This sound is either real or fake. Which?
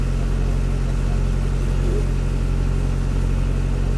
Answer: real